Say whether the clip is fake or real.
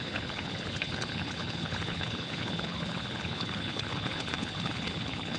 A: fake